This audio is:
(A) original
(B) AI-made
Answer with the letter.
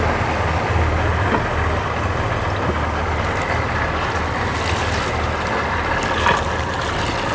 A